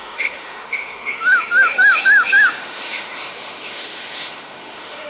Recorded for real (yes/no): no